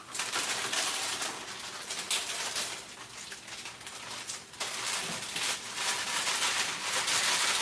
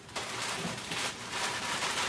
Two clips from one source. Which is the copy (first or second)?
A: second